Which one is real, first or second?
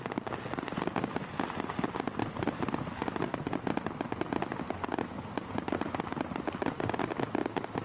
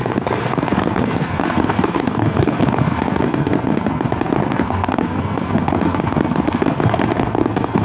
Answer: first